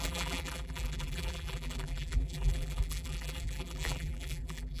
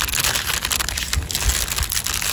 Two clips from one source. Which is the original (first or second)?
second